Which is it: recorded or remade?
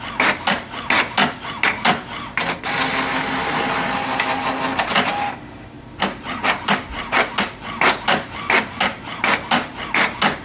recorded